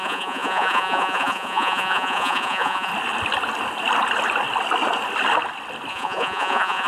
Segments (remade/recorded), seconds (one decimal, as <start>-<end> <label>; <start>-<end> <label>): 0.0-2.9 remade; 2.9-5.9 recorded; 5.9-6.9 remade